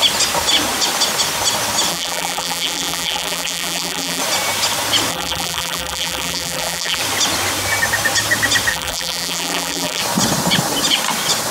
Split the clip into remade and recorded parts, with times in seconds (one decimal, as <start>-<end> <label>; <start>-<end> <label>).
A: 0.0-1.9 recorded; 1.9-4.2 remade; 4.2-5.1 recorded; 5.1-7.0 remade; 7.0-8.7 recorded; 8.7-10.0 remade; 10.0-11.5 recorded